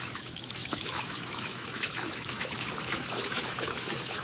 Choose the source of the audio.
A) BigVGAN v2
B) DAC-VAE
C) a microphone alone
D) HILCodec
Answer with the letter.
B